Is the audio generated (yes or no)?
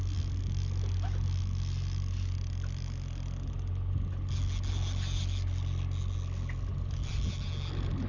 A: no